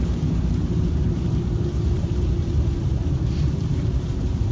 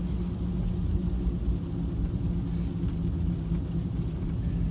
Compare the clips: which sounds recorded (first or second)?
second